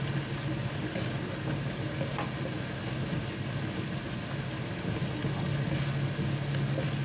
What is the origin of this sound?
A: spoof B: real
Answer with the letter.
B